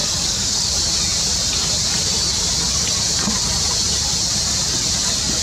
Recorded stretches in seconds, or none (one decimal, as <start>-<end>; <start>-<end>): 0.7-5.4